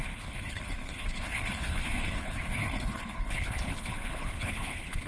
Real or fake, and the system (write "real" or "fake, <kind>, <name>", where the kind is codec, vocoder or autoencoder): fake, codec, HILCodec